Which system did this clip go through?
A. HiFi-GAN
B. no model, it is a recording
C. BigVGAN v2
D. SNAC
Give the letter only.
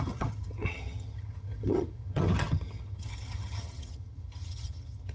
A